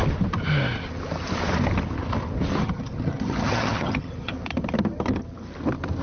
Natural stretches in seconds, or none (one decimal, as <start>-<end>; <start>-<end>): 0.0-2.6; 4.3-6.0